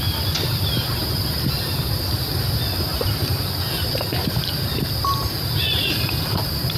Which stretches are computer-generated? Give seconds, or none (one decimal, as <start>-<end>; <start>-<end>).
2.9-3.5